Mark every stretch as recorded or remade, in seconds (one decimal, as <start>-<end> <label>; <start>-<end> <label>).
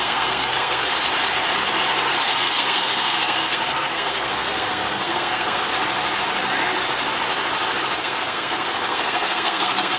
0.0-0.9 remade; 0.9-2.2 recorded; 2.2-5.7 remade; 5.7-8.0 recorded; 8.0-10.0 remade